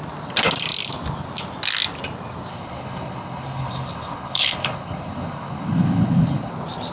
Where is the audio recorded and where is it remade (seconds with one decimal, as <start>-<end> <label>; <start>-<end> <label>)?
0.0-2.5 recorded; 2.5-6.5 remade; 6.5-6.9 recorded